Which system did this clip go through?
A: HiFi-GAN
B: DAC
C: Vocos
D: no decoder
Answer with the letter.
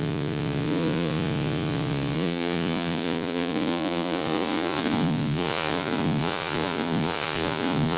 C